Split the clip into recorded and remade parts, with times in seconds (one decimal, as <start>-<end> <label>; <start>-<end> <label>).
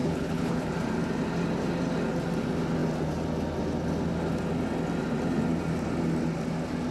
0.0-0.7 remade; 0.7-6.9 recorded